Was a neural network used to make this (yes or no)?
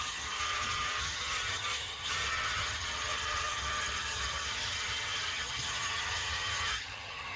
yes